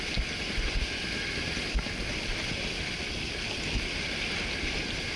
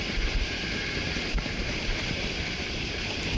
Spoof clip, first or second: second